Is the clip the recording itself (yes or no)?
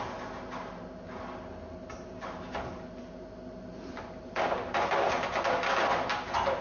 yes